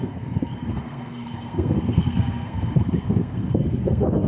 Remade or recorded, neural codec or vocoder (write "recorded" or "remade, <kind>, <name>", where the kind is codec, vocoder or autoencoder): remade, codec, SNAC